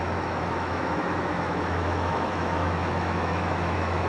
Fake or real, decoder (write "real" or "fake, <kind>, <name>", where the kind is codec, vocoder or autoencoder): fake, autoencoder, DAC-VAE